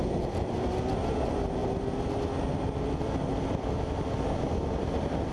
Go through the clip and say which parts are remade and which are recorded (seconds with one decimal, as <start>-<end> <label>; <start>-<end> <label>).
0.0-5.3 recorded

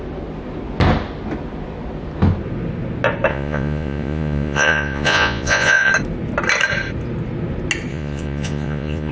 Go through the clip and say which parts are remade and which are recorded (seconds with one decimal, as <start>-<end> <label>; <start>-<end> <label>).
0.0-3.3 recorded; 3.3-5.9 remade; 5.9-7.9 recorded; 7.9-9.1 remade